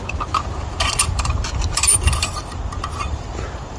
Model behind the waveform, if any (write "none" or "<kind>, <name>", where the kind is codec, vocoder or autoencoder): vocoder, BigVGAN v2